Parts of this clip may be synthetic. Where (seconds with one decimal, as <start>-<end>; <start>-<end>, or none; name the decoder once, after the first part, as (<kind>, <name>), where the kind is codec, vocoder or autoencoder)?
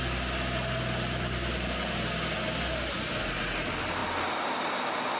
none